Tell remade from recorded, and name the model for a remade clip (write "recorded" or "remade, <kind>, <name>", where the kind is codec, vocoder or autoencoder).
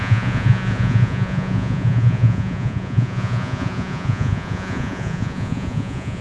remade, vocoder, Vocos